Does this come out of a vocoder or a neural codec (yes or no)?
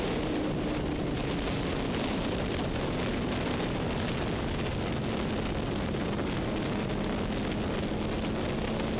no